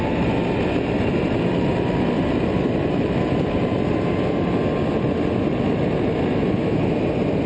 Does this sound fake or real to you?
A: real